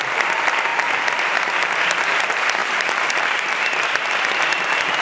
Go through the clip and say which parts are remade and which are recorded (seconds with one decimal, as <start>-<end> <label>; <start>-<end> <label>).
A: 0.0-2.6 recorded; 2.6-3.5 remade; 3.5-5.0 recorded